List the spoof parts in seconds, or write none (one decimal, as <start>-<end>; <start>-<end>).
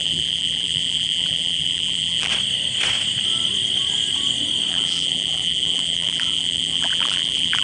0.0-2.3; 4.7-7.6